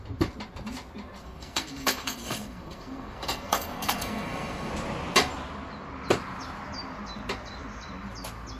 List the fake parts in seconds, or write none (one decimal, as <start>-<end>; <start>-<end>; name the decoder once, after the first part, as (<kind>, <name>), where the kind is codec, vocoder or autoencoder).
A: 1.2-4.7 (codec, SNAC)